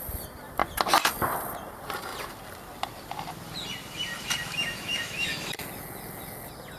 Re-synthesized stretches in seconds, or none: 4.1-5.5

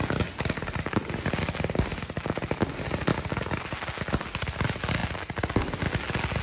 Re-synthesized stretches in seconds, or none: none

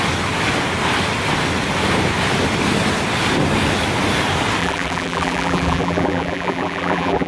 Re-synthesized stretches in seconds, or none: 4.6-7.3

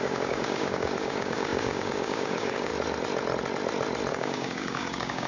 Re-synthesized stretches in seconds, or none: 0.0-2.7; 4.1-5.3

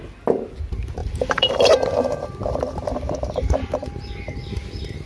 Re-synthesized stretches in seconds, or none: 1.0-4.1